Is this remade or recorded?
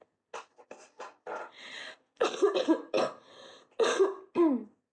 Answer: recorded